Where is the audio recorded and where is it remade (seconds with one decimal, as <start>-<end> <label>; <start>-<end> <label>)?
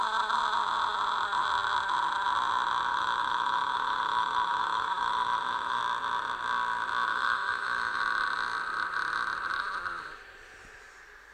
0.0-2.9 recorded; 2.9-5.8 remade; 5.8-7.1 recorded; 7.1-8.0 remade; 8.0-11.3 recorded